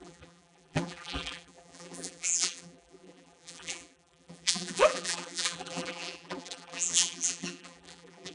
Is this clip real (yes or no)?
no